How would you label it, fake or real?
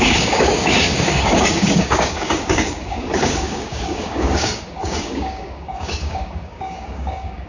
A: fake